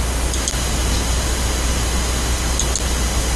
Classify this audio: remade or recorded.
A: recorded